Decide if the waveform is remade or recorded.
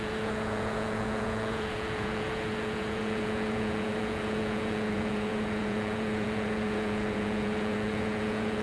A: remade